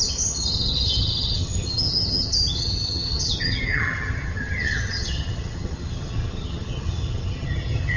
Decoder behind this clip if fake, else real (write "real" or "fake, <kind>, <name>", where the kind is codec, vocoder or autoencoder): fake, vocoder, HiFi-GAN